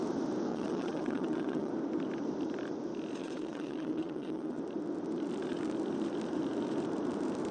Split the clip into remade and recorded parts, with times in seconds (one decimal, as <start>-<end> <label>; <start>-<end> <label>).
0.0-0.5 recorded; 0.5-1.7 remade; 1.7-3.2 recorded; 3.2-4.6 remade; 4.6-7.5 recorded